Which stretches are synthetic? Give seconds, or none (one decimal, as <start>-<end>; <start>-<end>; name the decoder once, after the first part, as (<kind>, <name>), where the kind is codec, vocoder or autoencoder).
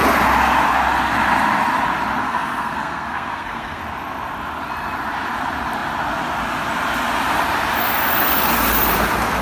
2.2-3.8 (codec, SNAC)